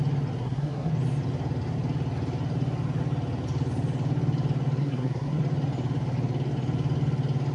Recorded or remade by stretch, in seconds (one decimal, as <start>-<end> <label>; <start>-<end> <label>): 0.0-0.4 recorded; 0.4-0.9 remade; 0.9-4.8 recorded; 4.8-5.4 remade; 5.4-7.5 recorded